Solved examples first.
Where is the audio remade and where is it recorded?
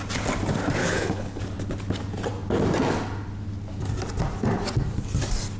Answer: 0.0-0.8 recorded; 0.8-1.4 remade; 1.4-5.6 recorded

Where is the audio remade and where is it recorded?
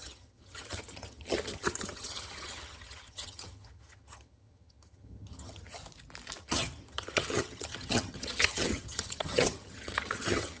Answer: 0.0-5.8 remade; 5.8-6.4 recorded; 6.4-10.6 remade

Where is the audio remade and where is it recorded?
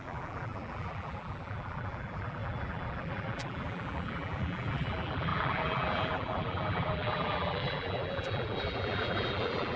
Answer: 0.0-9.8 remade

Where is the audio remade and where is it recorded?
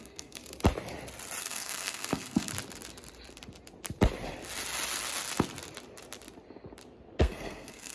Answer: 0.0-0.4 remade; 0.4-1.4 recorded; 1.4-2.5 remade; 2.5-7.2 recorded; 7.2-7.9 remade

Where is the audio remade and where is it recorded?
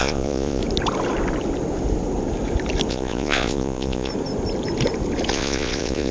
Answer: 0.0-0.6 remade; 0.6-2.9 recorded; 2.9-4.1 remade; 4.1-5.3 recorded; 5.3-6.1 remade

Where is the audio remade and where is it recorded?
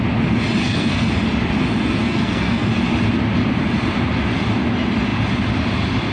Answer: 0.0-0.6 recorded; 0.6-1.1 remade; 1.1-2.0 recorded; 2.0-2.7 remade; 2.7-6.1 recorded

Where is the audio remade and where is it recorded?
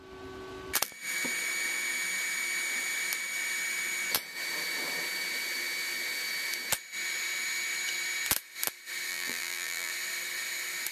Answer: 0.0-9.1 recorded; 9.1-9.9 remade; 9.9-10.9 recorded